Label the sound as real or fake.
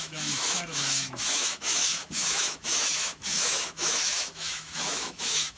fake